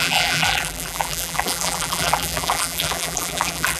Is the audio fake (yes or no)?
yes